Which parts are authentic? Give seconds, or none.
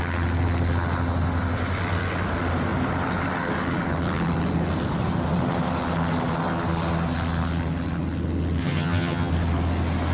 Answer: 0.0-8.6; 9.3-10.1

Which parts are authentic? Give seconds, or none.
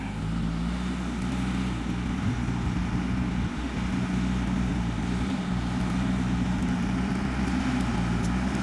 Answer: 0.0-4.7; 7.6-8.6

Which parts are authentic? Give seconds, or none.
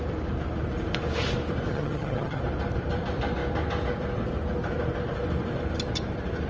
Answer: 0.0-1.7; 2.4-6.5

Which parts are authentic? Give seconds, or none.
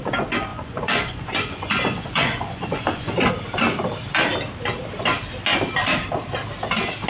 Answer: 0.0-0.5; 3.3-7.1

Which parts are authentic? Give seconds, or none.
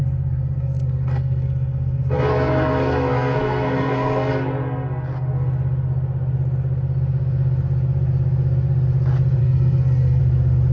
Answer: 4.3-9.4; 10.2-10.7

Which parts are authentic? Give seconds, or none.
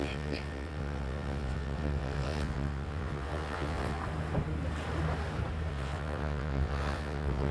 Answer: 4.0-5.7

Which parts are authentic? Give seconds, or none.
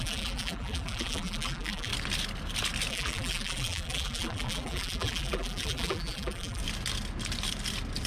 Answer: 1.9-2.9; 6.6-8.1